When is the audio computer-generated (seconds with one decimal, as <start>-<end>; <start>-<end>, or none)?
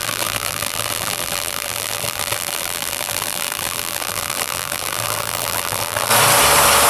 0.0-6.1